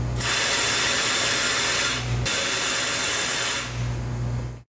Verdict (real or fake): real